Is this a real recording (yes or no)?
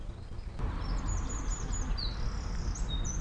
yes